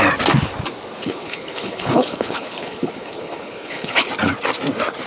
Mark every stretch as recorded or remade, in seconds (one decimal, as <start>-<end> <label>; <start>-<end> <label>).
0.0-1.0 recorded; 1.0-4.1 remade; 4.1-5.1 recorded